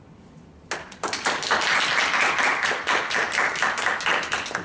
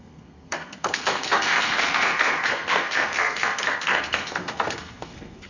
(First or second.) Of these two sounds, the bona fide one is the first